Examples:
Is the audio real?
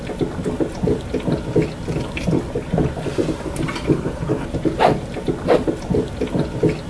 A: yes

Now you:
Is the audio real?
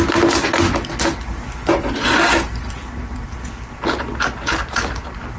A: yes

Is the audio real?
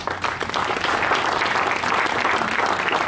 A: yes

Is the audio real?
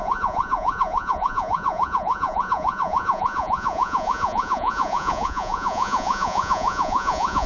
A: no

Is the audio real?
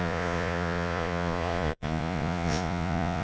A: no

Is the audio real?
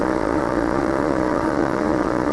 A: no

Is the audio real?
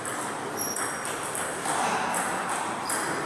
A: yes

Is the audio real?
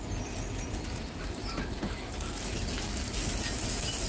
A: yes